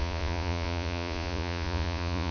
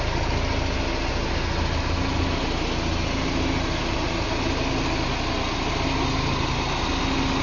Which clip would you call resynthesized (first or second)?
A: first